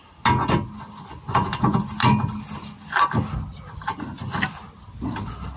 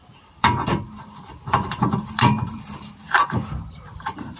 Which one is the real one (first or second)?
first